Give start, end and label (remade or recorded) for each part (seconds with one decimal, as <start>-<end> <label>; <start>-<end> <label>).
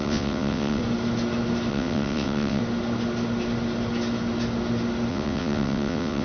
0.0-0.8 remade; 0.8-1.7 recorded; 1.7-2.6 remade; 2.6-5.1 recorded; 5.1-6.2 remade